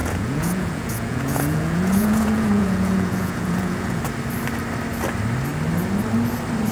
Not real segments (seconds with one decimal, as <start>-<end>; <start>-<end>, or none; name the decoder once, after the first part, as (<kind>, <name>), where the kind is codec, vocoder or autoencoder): 0.0-4.0 (vocoder, Vocos)